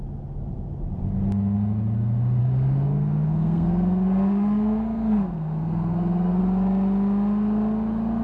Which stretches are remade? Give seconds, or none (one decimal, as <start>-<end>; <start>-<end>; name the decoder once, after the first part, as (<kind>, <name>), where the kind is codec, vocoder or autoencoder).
2.4-6.4 (codec, SNAC)